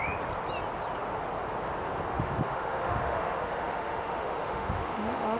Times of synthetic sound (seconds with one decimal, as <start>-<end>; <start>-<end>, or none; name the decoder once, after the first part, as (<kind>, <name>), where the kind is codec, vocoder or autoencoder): 2.1-5.4 (autoencoder, DAC-VAE)